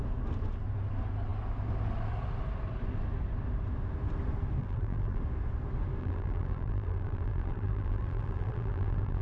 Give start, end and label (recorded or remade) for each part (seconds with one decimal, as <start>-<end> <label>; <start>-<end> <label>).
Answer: 0.0-4.6 recorded; 4.6-5.2 remade; 5.2-6.0 recorded; 6.0-9.2 remade